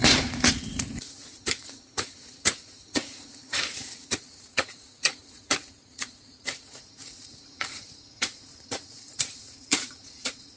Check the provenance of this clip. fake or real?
fake